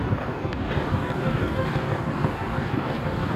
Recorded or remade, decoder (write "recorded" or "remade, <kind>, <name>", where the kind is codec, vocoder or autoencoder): remade, codec, DAC